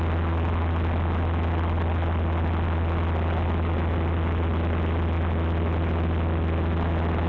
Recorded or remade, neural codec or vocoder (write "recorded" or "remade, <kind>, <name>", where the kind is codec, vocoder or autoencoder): recorded